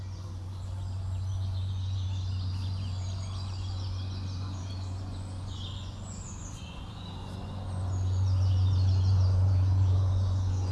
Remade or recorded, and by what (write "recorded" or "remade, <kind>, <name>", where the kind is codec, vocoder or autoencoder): remade, vocoder, Vocos